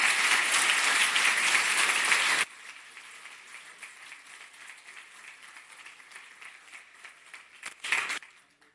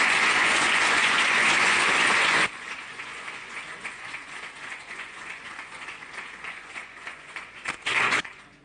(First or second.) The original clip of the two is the first